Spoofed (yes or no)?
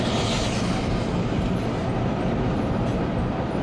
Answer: no